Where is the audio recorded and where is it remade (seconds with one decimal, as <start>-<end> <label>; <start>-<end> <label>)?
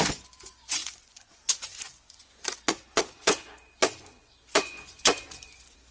0.0-5.9 remade